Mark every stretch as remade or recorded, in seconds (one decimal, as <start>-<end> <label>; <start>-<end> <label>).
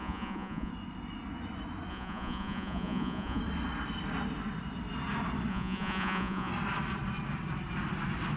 0.0-0.7 remade; 0.7-1.9 recorded; 1.9-3.4 remade; 3.4-5.5 recorded; 5.5-6.5 remade; 6.5-8.4 recorded